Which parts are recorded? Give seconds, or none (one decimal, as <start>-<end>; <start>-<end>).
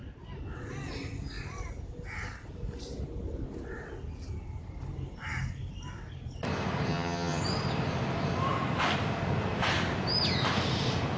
0.0-6.9; 7.4-11.2